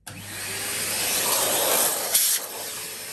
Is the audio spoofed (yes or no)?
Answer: no